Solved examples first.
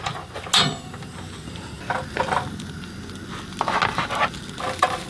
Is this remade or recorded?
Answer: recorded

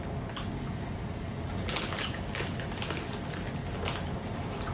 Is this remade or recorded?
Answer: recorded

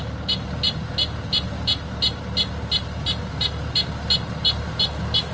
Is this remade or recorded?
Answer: recorded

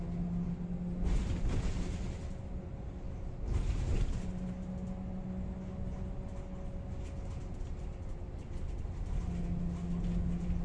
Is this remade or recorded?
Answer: recorded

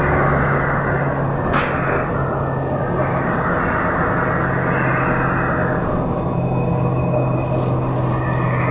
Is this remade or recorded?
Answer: recorded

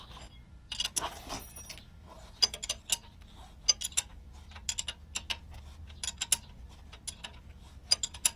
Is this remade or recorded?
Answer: recorded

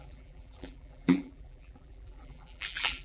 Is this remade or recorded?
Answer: remade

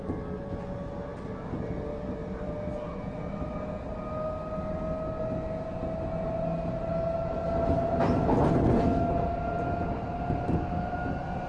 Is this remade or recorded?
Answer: recorded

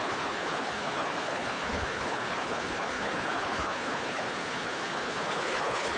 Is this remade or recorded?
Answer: remade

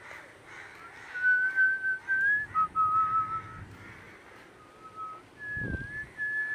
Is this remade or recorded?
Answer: recorded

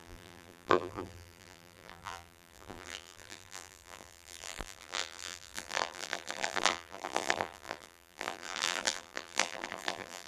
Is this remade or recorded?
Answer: remade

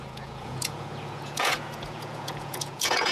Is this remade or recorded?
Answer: remade